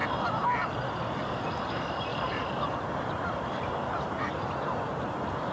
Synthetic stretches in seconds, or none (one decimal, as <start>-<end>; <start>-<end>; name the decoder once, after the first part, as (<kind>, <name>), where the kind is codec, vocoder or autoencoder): 2.1-4.8 (vocoder, BigVGAN v2)